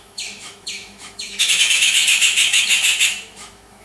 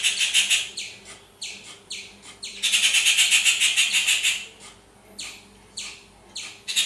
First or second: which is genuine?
second